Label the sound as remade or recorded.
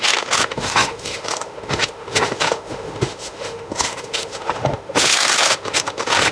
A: remade